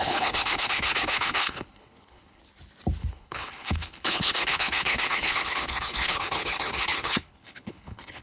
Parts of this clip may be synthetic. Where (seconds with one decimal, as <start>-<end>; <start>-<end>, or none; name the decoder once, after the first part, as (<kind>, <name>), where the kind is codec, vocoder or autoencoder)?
0.0-2.4 (codec, HILCodec); 3.1-8.2